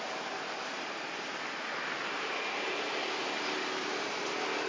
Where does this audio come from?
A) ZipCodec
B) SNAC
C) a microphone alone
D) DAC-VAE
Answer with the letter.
C